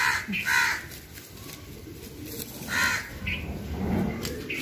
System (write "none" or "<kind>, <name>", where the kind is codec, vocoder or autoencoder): none